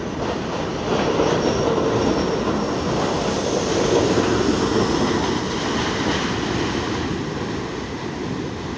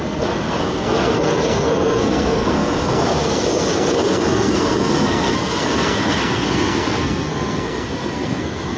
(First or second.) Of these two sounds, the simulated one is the second